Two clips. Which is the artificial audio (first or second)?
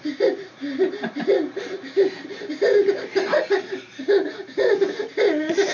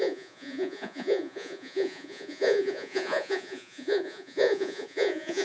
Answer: second